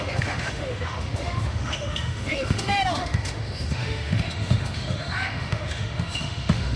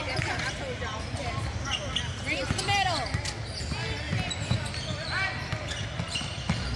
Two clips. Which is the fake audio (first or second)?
first